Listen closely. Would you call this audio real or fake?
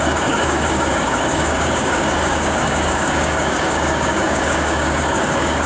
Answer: fake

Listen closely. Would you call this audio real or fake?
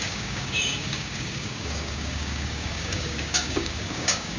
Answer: fake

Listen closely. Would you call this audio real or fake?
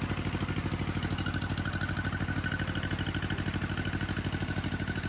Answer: real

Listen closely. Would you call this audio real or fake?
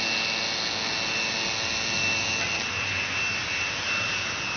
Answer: real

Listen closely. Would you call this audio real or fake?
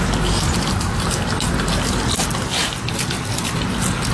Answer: real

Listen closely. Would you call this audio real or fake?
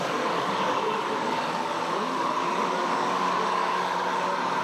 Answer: fake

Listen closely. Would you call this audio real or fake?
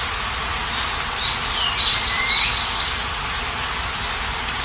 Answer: real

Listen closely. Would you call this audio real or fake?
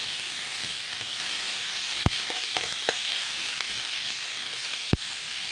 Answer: fake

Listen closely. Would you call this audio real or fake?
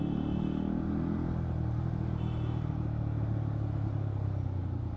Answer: real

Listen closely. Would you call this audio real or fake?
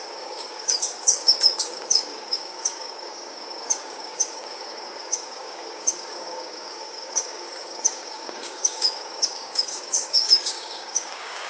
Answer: fake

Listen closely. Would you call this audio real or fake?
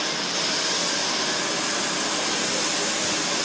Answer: real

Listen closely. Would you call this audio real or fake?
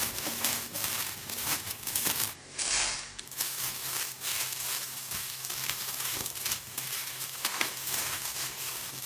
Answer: fake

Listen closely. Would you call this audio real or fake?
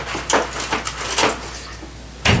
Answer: real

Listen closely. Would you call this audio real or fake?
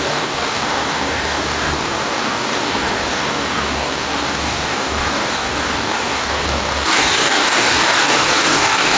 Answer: fake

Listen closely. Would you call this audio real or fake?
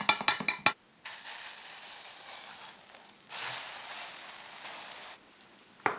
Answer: real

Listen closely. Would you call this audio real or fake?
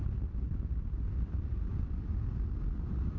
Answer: real